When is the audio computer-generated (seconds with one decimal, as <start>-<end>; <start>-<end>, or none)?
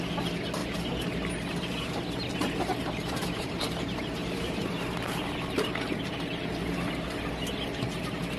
0.6-1.3; 2.4-6.1